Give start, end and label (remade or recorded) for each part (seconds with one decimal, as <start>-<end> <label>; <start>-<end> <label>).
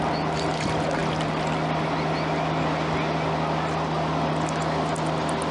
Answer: 0.0-5.5 recorded